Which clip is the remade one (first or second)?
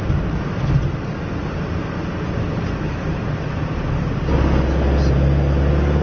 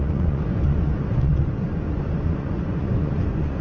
second